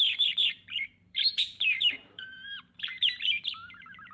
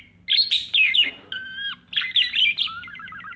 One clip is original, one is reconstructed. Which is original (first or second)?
second